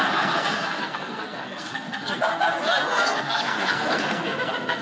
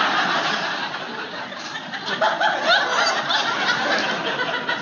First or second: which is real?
second